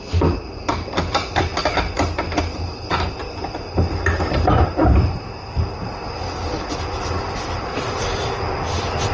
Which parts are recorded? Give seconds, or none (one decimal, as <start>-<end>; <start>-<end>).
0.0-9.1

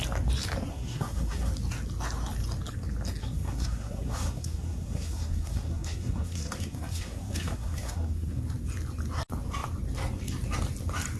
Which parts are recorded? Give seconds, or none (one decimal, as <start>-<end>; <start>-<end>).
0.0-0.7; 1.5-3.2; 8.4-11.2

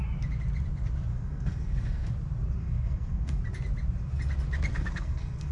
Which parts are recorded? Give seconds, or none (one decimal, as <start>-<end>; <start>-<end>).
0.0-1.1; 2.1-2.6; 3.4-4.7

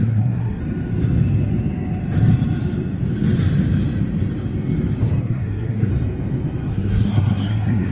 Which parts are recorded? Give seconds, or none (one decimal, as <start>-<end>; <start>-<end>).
0.6-5.2; 5.9-6.7

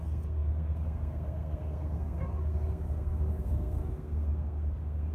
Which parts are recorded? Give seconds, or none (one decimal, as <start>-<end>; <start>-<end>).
none

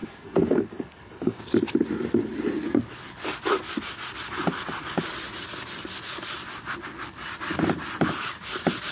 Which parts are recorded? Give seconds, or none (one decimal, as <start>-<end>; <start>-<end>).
1.4-8.9